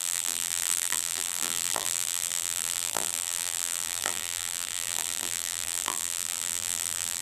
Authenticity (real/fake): fake